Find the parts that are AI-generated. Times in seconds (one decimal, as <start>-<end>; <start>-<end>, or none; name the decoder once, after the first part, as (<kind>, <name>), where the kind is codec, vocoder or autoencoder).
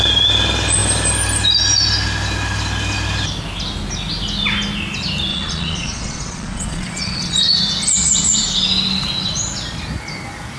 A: 5.3-7.4 (vocoder, Vocos)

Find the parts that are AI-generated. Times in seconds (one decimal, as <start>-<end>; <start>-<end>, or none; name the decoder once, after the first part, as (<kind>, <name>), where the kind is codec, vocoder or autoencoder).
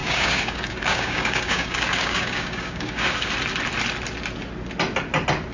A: 0.0-3.3 (codec, DAC)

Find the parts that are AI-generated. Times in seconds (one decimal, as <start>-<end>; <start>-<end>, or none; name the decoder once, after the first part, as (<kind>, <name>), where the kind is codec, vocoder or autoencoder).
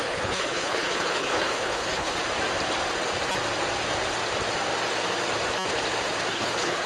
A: 0.0-2.2 (codec, HILCodec); 6.3-6.9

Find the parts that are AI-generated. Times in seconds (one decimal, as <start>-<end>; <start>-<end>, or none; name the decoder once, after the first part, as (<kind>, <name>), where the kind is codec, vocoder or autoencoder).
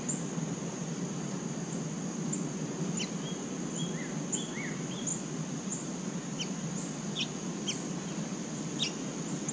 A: none